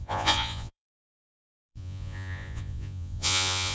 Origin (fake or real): fake